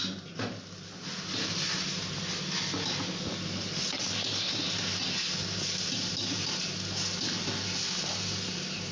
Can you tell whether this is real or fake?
real